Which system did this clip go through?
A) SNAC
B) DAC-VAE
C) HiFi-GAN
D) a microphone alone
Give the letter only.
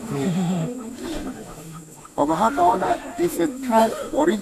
B